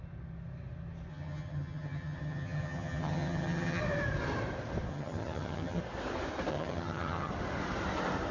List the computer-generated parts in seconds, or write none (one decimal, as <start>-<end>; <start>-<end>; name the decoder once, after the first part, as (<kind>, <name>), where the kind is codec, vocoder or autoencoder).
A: 1.1-3.8 (vocoder, HiFi-GAN); 4.9-5.8; 6.5-7.3